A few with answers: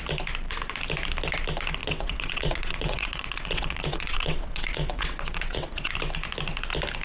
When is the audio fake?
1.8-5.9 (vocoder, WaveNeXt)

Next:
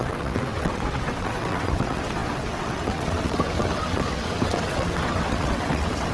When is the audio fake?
0.0-6.1 (vocoder, WaveNeXt)

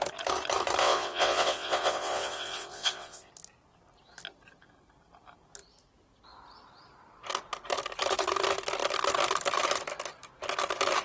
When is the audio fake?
0.8-3.3 (vocoder, WaveNeXt)